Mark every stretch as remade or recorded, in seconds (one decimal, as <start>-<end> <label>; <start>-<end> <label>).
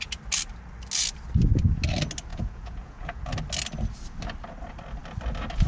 0.0-2.3 recorded; 2.3-3.2 remade; 3.2-5.7 recorded